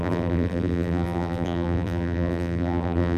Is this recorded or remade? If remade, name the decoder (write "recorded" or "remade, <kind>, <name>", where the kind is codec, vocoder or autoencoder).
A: remade, vocoder, BigVGAN v2